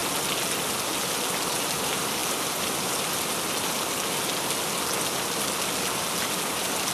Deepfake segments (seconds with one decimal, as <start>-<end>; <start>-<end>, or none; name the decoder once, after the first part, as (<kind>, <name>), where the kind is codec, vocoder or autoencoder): none